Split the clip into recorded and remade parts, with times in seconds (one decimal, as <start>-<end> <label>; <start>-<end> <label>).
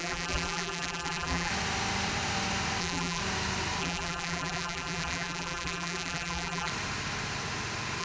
0.0-1.5 remade; 1.5-2.8 recorded; 2.8-3.2 remade; 3.2-3.8 recorded; 3.8-6.7 remade; 6.7-8.0 recorded